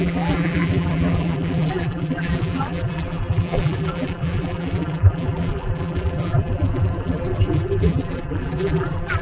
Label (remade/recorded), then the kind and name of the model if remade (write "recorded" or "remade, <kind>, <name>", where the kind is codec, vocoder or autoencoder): remade, vocoder, BigVGAN v2